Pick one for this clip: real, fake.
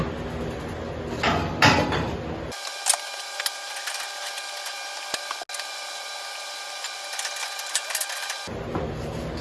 real